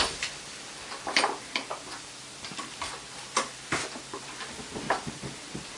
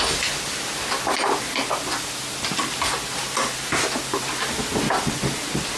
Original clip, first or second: second